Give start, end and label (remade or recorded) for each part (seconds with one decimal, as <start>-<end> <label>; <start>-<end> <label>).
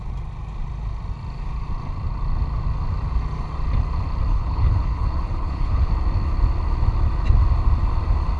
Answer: 0.0-4.3 recorded; 4.3-5.9 remade; 5.9-8.4 recorded